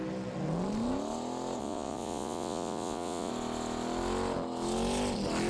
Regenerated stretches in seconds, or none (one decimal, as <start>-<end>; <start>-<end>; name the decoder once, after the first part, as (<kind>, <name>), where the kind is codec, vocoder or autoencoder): 1.6-3.3 (vocoder, Vocos)